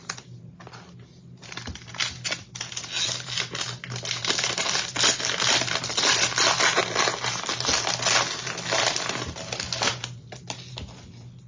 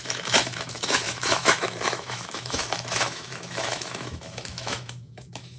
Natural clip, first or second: first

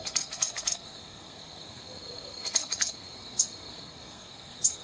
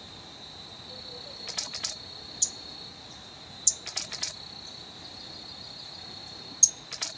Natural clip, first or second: second